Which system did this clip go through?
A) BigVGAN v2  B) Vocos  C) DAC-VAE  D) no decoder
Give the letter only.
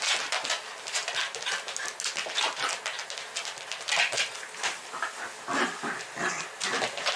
D